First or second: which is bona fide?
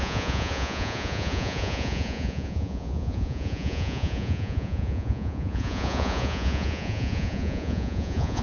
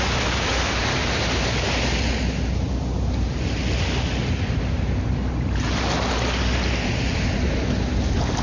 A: second